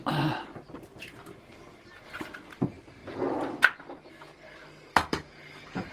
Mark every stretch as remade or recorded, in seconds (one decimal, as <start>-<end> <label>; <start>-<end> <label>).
0.0-4.9 recorded; 4.9-5.9 remade